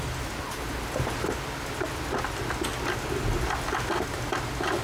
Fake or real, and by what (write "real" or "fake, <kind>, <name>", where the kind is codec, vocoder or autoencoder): real